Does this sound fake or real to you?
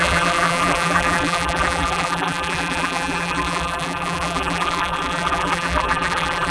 fake